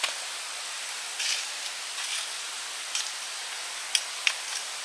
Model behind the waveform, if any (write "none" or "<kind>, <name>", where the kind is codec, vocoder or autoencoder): none